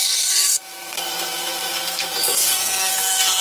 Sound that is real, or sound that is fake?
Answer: fake